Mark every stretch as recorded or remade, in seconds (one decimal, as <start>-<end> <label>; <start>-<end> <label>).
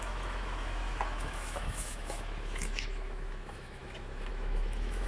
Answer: 0.0-5.1 remade